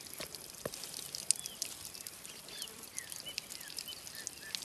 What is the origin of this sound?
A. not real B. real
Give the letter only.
B